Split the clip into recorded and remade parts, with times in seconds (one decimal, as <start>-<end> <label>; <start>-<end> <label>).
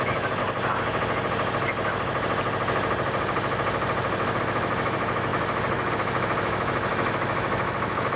0.0-0.4 remade; 0.4-4.4 recorded; 4.4-8.2 remade